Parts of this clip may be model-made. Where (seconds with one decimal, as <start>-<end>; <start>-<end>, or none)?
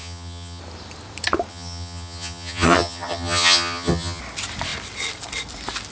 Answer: 0.0-0.6; 1.5-4.2